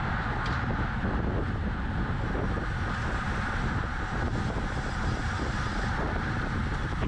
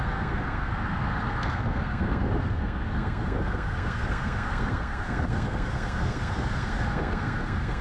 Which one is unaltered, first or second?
first